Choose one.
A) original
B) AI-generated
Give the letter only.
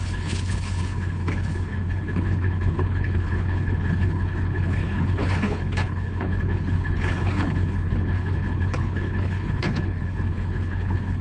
B